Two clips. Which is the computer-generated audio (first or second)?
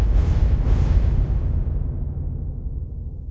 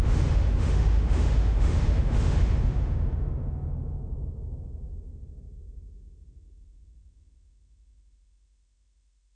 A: second